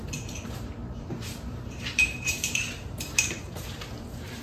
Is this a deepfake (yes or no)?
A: yes